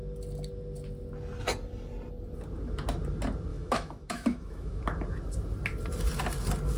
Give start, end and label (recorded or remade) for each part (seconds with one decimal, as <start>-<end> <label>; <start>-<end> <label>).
0.0-3.5 recorded; 3.5-4.8 remade; 4.8-6.8 recorded